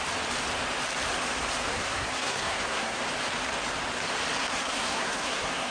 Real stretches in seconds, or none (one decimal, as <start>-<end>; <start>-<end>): 0.0-1.7; 3.0-4.4